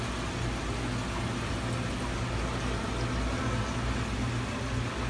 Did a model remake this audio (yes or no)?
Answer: no